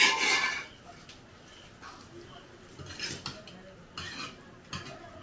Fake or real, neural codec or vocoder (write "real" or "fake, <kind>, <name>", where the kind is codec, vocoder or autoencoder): real